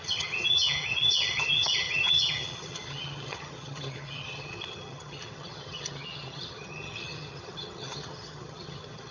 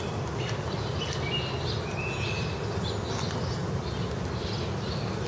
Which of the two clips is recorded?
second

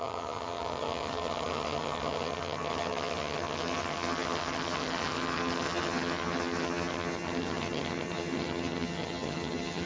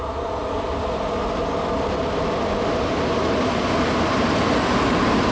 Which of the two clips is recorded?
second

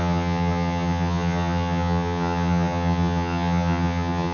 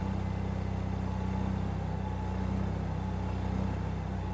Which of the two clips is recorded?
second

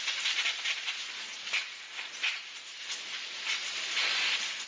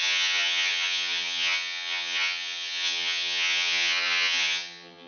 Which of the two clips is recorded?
first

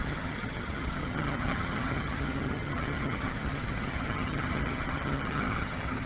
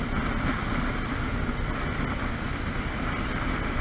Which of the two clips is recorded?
second